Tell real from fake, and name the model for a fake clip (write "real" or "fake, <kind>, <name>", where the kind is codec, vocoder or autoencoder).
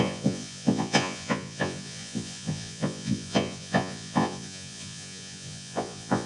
fake, vocoder, Vocos